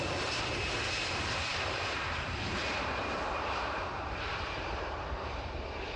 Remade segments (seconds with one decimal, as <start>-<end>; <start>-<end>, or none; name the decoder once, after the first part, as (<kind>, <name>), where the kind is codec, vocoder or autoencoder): 0.0-6.0 (vocoder, BigVGAN v2)